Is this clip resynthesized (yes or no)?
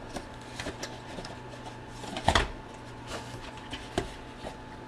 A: yes